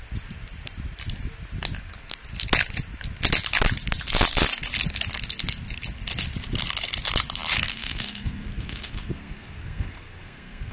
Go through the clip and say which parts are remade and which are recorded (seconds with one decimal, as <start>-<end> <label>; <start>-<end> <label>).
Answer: 0.0-7.7 recorded; 7.7-10.7 remade